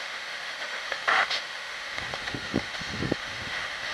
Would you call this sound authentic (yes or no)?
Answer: no